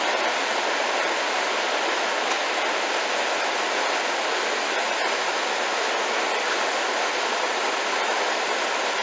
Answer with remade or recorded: recorded